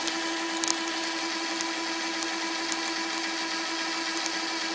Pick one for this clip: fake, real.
real